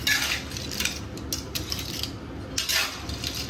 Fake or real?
real